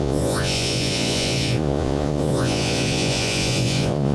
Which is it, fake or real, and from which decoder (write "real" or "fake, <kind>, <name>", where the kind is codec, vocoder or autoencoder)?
fake, vocoder, Vocos